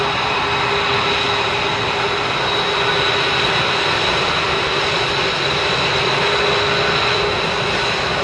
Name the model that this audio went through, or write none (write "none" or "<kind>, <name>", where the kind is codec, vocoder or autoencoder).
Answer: none